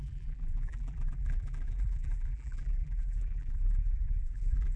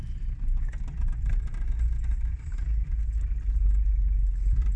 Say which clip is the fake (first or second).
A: first